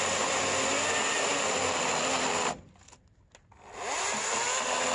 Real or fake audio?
real